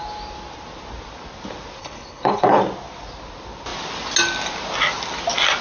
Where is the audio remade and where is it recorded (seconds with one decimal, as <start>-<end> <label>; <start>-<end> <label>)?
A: 0.0-1.8 recorded; 1.8-2.6 remade; 2.6-5.6 recorded